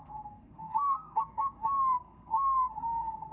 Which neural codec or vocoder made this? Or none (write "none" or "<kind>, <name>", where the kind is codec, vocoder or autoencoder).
codec, SNAC